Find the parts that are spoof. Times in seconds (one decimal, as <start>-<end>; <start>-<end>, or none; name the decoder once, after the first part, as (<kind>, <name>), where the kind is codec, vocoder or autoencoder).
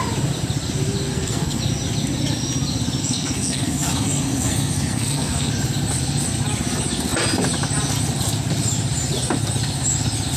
1.1-1.6 (codec, SNAC); 3.0-5.5